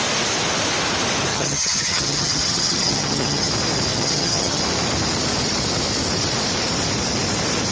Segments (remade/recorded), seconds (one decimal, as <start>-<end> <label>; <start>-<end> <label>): 0.0-1.3 recorded; 1.3-3.5 remade; 3.5-3.9 recorded; 3.9-4.6 remade; 4.6-7.7 recorded